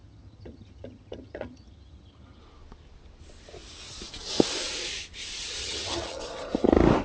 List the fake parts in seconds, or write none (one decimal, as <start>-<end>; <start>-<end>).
0.0-2.4; 5.6-6.2